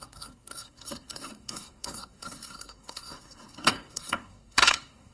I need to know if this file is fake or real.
fake